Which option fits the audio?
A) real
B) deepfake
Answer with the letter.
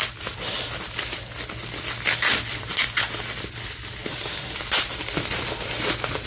A